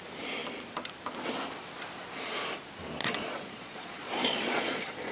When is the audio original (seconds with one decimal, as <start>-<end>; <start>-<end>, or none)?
0.0-3.0